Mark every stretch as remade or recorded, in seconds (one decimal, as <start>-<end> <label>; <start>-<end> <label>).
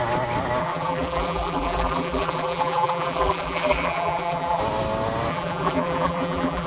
0.0-0.6 recorded; 0.6-4.6 remade; 4.6-5.3 recorded; 5.3-6.7 remade